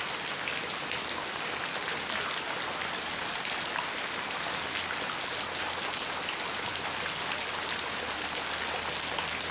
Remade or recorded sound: recorded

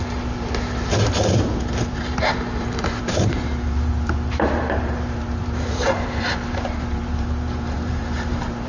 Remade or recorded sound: remade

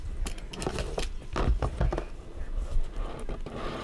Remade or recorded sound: recorded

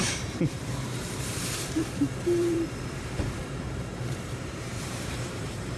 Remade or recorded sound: remade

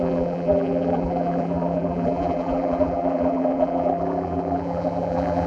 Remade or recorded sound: remade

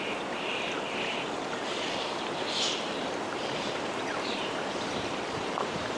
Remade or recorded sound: remade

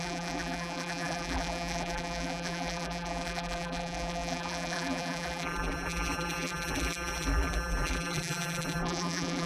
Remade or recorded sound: remade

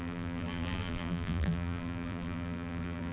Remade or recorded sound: remade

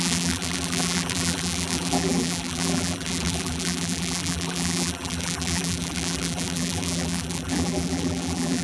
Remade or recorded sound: remade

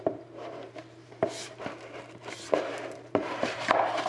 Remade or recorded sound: remade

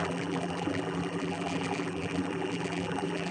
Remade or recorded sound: remade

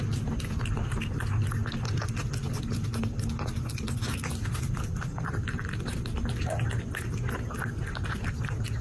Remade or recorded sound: recorded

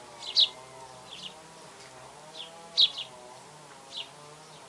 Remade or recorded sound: recorded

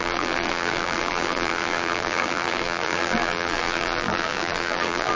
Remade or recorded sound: remade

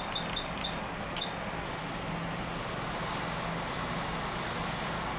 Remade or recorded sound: recorded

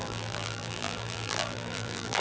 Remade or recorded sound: remade